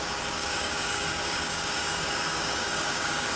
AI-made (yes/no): yes